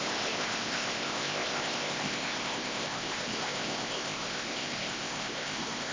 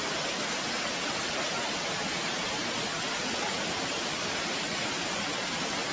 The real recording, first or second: second